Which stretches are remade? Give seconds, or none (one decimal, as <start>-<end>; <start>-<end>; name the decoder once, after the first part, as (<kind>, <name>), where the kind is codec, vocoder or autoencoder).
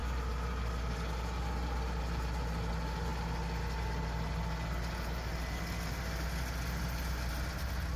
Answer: none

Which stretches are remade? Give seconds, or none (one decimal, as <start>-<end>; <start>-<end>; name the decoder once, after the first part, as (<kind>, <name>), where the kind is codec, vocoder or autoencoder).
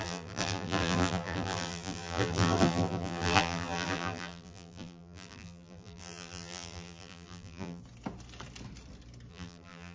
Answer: 0.0-7.8 (vocoder, BigVGAN v2); 9.3-9.9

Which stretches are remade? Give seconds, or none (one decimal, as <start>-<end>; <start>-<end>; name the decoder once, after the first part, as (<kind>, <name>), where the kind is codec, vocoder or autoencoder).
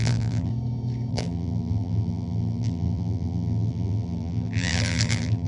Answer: 0.0-0.5 (vocoder, BigVGAN v2); 1.1-5.5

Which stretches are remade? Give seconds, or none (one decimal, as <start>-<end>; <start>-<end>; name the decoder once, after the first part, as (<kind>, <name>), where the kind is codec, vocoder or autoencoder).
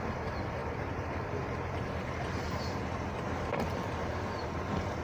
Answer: 0.0-5.0 (vocoder, BigVGAN v2)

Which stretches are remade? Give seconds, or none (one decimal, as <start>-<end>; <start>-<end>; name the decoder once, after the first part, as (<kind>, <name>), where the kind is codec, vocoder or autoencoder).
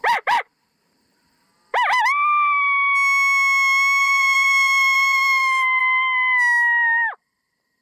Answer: 0.0-1.5 (vocoder, BigVGAN v2); 4.0-5.8; 7.2-7.8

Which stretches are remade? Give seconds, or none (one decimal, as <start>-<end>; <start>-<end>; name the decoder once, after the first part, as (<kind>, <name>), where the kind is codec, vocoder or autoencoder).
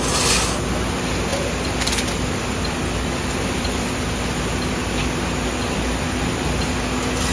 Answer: 1.3-4.4 (vocoder, BigVGAN v2)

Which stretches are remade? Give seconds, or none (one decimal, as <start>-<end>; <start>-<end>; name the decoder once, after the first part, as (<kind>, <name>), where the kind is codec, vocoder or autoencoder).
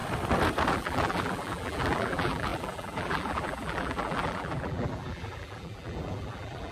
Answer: 0.7-6.7 (vocoder, BigVGAN v2)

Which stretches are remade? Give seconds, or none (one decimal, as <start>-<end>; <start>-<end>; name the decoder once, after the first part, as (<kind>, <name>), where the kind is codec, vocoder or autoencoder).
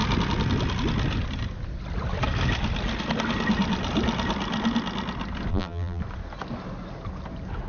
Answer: 5.5-6.0 (vocoder, BigVGAN v2)